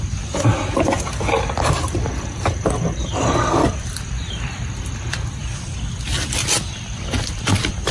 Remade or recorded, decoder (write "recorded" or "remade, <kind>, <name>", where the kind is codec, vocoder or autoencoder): recorded